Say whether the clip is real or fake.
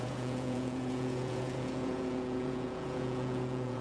fake